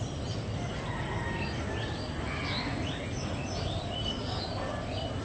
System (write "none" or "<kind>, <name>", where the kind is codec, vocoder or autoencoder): none